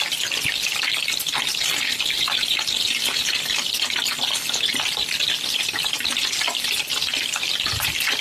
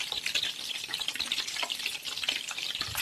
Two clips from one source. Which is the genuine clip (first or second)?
first